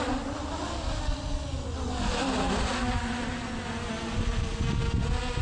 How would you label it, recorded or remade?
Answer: recorded